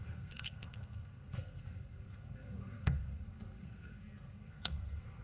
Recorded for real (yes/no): no